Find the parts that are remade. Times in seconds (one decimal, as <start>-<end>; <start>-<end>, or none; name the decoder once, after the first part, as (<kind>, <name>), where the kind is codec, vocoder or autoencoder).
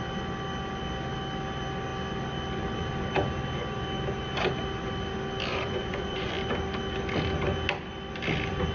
5.5-6.3 (vocoder, Vocos)